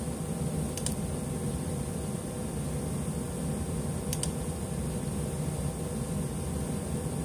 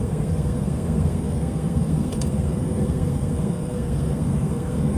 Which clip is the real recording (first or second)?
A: first